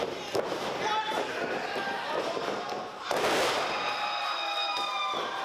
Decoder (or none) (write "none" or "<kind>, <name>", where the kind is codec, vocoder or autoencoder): none